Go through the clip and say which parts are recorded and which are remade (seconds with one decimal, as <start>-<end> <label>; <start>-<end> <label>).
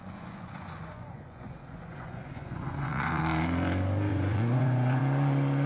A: 0.0-3.2 remade; 3.2-4.1 recorded; 4.1-5.0 remade; 5.0-5.7 recorded